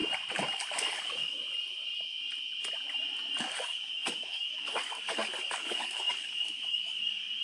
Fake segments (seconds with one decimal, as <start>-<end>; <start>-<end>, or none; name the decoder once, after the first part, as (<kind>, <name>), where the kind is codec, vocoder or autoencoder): 0.8-1.4 (codec, DAC); 3.4-7.4